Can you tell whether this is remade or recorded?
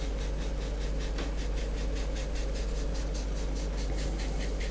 recorded